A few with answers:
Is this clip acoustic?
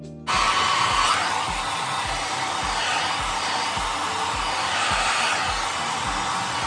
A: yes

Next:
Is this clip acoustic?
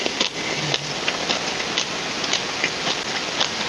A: yes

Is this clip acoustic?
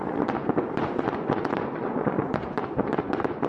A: no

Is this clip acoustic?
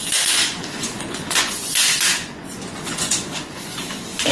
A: no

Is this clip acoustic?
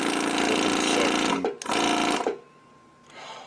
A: yes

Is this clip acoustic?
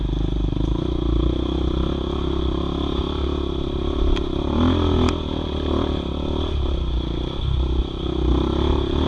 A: yes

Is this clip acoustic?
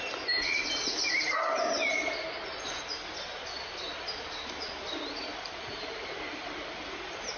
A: yes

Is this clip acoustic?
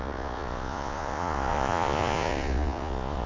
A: no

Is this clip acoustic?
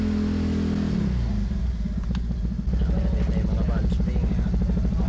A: yes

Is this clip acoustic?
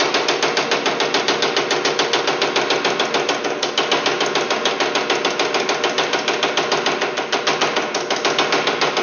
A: yes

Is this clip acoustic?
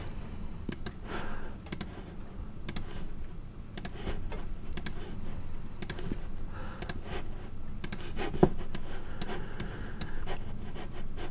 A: yes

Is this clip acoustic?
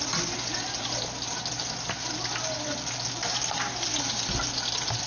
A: yes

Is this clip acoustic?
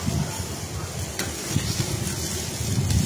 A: yes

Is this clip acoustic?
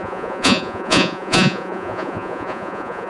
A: no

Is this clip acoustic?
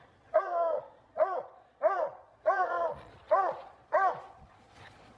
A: no